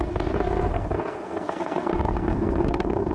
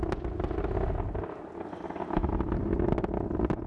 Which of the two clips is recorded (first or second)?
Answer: second